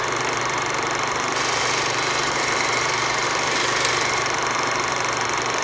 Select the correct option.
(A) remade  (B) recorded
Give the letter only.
A